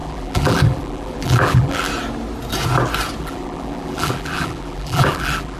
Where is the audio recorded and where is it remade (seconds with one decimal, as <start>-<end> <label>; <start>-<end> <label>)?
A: 0.0-1.9 remade; 1.9-3.2 recorded; 3.2-5.6 remade